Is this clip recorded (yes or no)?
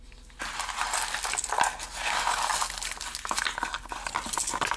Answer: yes